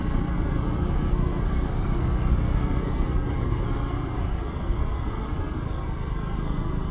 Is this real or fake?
fake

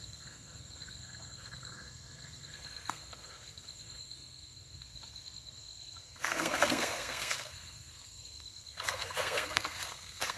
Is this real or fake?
fake